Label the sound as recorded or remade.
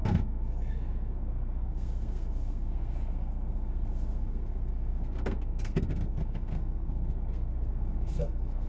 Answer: remade